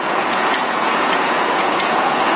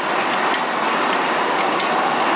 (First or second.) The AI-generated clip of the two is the first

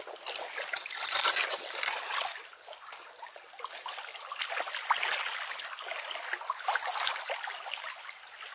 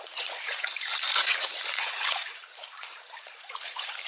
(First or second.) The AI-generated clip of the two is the second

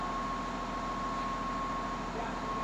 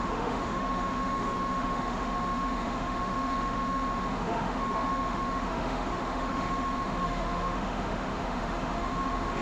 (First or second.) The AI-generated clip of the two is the second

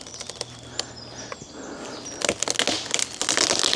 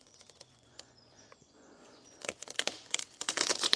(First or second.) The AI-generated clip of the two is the second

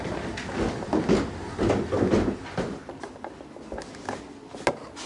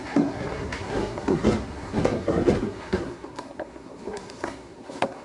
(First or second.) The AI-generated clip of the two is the second